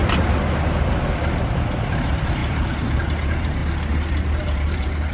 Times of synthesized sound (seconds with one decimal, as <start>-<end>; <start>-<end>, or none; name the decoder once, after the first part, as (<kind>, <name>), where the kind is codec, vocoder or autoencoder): 1.5-3.6 (vocoder, BigVGAN v2); 4.3-5.1